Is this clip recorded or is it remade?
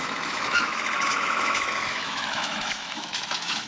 remade